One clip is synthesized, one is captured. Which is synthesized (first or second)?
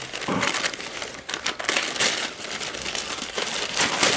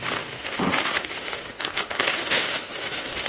second